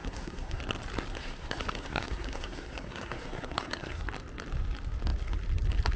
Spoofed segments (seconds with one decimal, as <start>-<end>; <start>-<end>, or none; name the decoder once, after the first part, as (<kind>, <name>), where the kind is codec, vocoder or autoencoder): 0.0-0.6 (codec, SNAC); 1.1-4.0